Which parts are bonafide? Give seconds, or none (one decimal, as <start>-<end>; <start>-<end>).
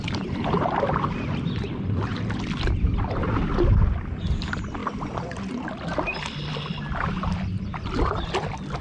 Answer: 0.0-8.8